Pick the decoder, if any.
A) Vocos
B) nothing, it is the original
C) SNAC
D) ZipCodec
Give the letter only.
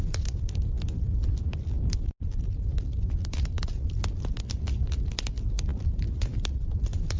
B